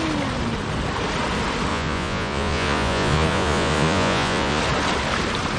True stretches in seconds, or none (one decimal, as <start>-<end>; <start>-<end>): 0.0-1.7; 4.6-5.6